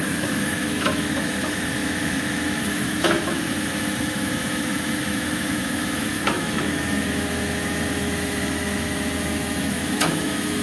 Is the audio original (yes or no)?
no